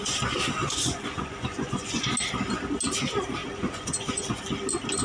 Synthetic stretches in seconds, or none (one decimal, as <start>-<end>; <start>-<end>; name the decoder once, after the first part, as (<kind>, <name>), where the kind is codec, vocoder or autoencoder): 0.6-2.1 (vocoder, Vocos); 3.4-4.4